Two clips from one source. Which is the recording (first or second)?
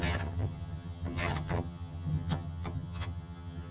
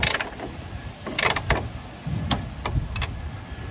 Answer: second